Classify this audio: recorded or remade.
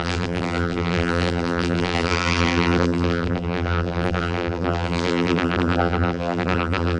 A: remade